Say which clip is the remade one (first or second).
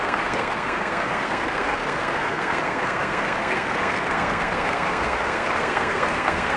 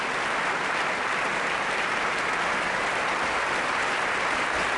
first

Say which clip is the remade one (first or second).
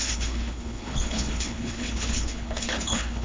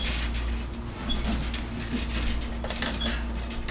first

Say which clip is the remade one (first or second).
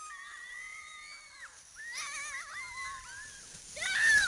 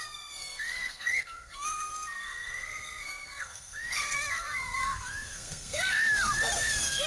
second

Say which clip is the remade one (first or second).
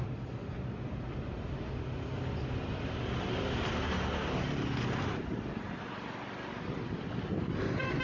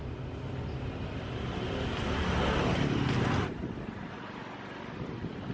second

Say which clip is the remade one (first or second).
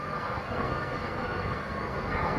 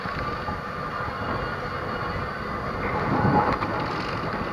first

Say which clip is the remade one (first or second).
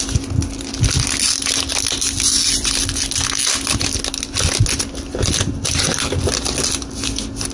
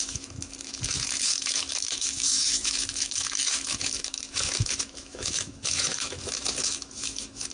second